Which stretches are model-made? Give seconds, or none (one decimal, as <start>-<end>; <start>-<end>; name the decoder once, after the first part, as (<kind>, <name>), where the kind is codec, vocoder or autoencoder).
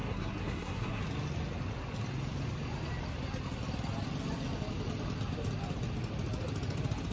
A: 0.0-1.0 (codec, SNAC)